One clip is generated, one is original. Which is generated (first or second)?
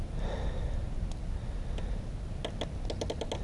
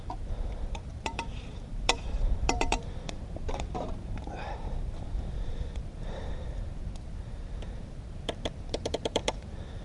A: second